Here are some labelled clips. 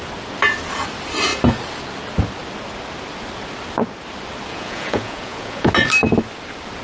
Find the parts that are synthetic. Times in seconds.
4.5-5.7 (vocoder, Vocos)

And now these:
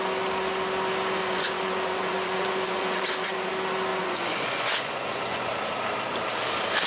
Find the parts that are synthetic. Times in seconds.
1.2-3.5 (vocoder, Vocos); 3.9-5.5

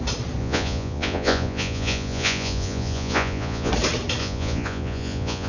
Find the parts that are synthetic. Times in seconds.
0.4-3.7 (vocoder, Vocos); 4.2-5.5

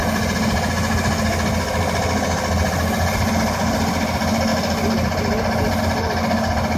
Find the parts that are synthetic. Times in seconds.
none

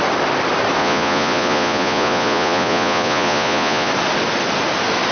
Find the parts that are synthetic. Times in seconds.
0.8-3.9 (vocoder, Vocos)